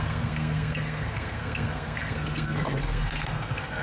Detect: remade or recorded remade